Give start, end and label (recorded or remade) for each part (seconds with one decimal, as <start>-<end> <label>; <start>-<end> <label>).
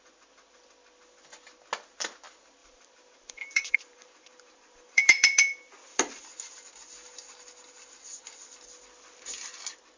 0.0-2.6 recorded; 2.6-6.2 remade; 6.2-10.0 recorded